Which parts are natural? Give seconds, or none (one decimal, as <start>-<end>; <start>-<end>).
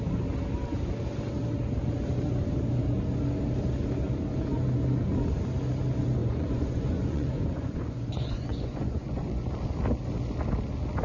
0.0-6.2; 9.5-11.0